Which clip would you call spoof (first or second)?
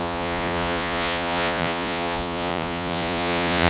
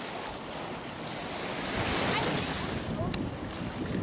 first